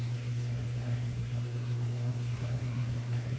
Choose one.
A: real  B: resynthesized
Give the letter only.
B